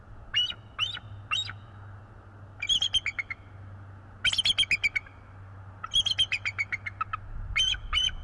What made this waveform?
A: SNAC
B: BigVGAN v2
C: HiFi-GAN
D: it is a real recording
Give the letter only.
D